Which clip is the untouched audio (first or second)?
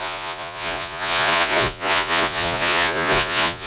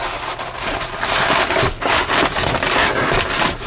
second